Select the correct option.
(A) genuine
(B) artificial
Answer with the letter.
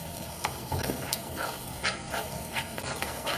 B